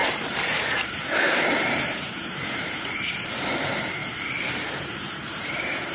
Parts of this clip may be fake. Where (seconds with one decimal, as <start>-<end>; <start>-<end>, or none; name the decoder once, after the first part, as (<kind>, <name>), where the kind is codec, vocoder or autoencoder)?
0.0-4.0 (vocoder, BigVGAN v2); 4.5-5.9